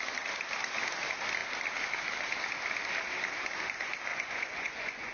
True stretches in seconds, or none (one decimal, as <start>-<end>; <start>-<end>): 0.0-4.1